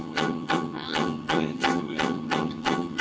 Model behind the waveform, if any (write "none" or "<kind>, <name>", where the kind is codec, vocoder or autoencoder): vocoder, HiFi-GAN